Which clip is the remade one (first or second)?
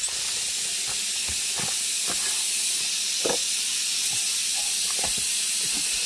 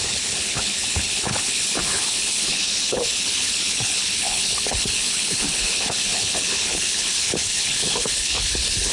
second